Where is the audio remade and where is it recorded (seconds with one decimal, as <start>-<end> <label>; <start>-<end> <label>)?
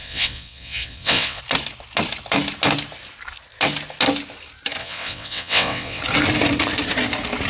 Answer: 0.0-1.4 remade; 1.4-4.8 recorded; 4.8-6.0 remade; 6.0-7.5 recorded